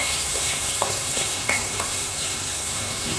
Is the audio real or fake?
fake